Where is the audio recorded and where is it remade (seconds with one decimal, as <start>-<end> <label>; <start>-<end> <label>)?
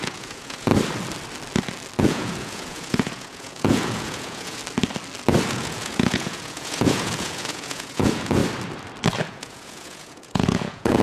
0.0-0.7 remade; 0.7-2.0 recorded; 2.0-4.6 remade; 4.6-5.5 recorded; 5.5-8.4 remade; 8.4-9.3 recorded; 9.3-11.0 remade